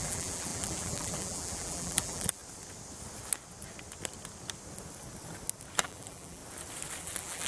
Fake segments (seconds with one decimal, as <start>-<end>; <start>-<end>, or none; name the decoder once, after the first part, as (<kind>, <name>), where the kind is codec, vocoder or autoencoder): 0.0-2.4 (vocoder, BigVGAN v2); 5.8-6.4; 7.0-7.5